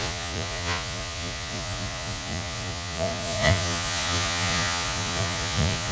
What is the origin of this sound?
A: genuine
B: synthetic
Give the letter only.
B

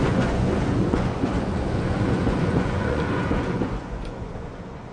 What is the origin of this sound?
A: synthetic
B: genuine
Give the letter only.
A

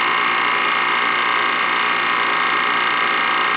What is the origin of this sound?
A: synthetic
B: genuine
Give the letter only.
B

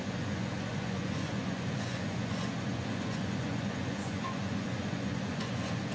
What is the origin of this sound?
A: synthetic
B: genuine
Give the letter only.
A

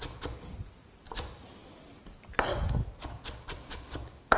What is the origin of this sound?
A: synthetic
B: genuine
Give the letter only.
B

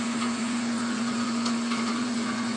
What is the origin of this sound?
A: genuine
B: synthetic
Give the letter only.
B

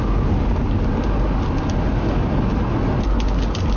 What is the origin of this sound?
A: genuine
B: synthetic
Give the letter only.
A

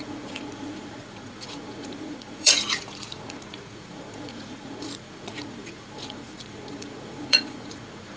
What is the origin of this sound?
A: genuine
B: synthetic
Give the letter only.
B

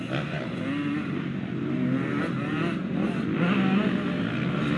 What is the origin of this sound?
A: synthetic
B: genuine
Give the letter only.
B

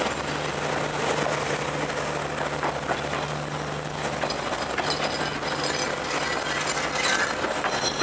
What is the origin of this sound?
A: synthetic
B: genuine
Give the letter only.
B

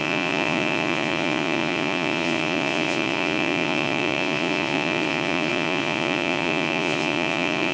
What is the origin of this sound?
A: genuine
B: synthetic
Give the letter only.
B